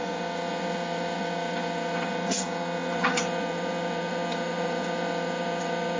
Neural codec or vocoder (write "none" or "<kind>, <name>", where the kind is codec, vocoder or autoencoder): vocoder, HiFi-GAN